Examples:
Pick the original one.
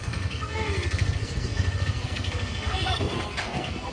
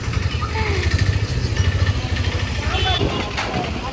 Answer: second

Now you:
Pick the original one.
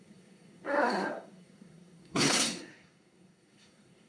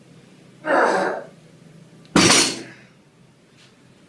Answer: second